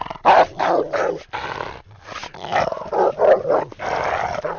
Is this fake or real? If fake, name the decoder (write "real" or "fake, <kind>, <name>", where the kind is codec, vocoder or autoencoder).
real